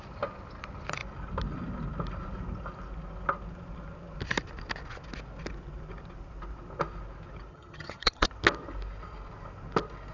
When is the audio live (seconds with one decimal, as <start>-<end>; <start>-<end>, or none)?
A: 0.0-7.5; 8.3-10.1

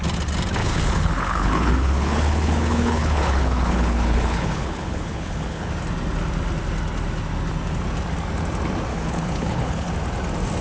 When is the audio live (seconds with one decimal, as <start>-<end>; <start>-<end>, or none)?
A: 0.0-0.6; 5.7-8.9; 9.9-10.6

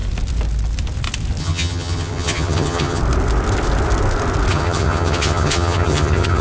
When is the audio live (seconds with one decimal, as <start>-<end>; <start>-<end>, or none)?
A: 0.0-1.4; 3.0-4.5

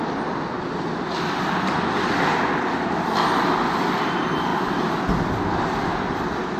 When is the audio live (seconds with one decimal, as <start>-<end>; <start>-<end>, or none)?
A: 0.0-4.5; 5.3-6.6

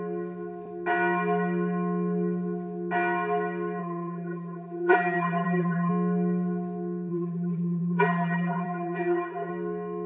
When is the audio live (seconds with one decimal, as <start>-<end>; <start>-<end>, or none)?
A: 0.0-3.8; 5.9-7.1; 9.5-10.1

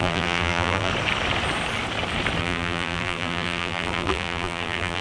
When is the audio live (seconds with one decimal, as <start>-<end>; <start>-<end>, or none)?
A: 0.9-2.4

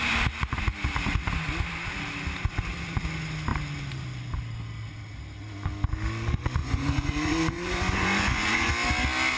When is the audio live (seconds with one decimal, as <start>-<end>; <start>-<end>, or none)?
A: 0.0-6.6; 8.7-9.4